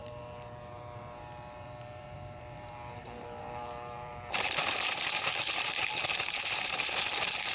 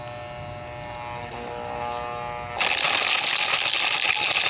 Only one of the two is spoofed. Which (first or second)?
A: first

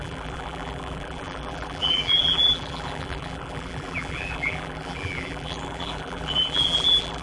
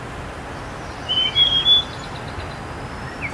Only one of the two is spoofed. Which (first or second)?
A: first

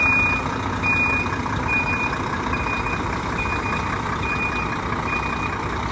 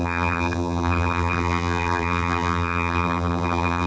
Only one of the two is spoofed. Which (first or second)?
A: second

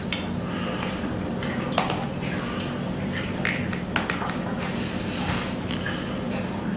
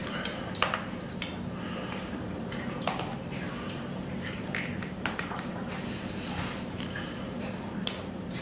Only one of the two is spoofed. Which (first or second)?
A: second